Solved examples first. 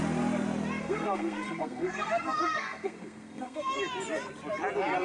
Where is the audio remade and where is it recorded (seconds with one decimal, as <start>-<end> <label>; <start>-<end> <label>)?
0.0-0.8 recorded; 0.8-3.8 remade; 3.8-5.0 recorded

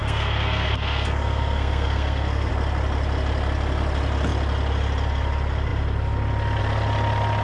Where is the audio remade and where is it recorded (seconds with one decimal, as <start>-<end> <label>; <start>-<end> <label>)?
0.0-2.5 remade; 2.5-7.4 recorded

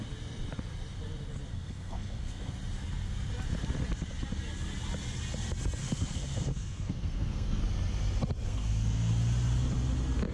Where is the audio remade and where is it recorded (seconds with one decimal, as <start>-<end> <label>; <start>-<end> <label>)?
0.0-1.5 recorded; 1.5-2.5 remade; 2.5-5.8 recorded; 5.8-7.6 remade; 7.6-8.4 recorded; 8.4-9.1 remade; 9.1-10.3 recorded

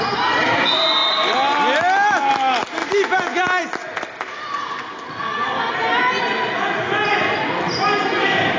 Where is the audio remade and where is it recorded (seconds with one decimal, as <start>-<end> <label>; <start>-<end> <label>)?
0.0-8.6 recorded

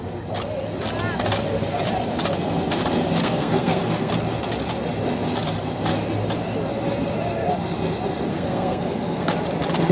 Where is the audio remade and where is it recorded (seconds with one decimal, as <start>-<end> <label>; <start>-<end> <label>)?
0.0-3.2 recorded; 3.2-4.1 remade; 4.1-8.3 recorded; 8.3-9.3 remade; 9.3-9.9 recorded

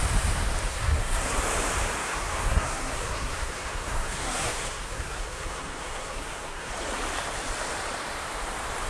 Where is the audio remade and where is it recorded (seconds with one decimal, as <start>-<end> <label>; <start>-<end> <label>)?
0.0-0.7 recorded; 0.7-1.4 remade; 1.4-2.0 recorded; 2.0-6.7 remade; 6.7-8.9 recorded

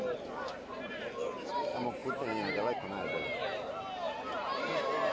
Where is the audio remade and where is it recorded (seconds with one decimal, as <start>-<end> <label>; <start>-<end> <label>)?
0.0-5.1 recorded

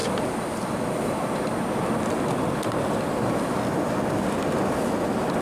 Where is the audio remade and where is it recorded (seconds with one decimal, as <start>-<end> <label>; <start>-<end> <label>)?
0.0-5.4 recorded